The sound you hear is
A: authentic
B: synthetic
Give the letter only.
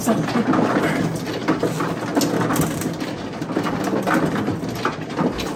A